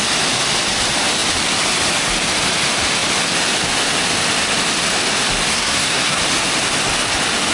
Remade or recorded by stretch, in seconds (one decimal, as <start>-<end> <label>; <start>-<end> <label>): 0.0-5.5 recorded; 5.5-6.2 remade; 6.2-7.5 recorded